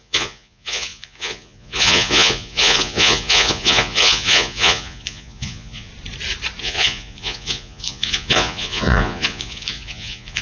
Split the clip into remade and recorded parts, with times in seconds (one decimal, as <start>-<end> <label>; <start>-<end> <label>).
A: 0.0-5.9 remade; 5.9-6.6 recorded; 6.6-10.4 remade